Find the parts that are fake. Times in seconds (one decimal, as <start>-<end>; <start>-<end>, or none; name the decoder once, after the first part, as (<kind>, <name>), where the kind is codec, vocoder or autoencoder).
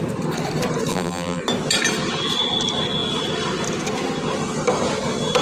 0.9-1.4 (vocoder, BigVGAN v2)